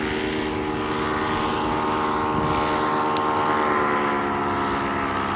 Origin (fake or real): real